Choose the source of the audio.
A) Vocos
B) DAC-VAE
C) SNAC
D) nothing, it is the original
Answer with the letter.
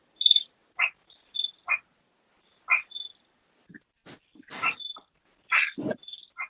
D